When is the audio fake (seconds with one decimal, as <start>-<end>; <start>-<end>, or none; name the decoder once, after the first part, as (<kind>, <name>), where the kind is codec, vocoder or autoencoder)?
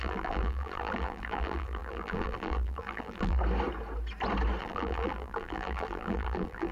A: 0.0-3.4 (vocoder, BigVGAN v2); 4.6-6.7